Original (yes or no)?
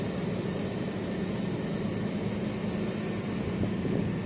yes